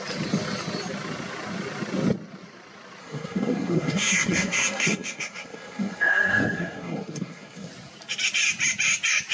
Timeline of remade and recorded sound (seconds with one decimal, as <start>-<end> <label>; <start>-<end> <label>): 0.0-3.0 recorded; 3.0-7.7 remade; 7.7-9.3 recorded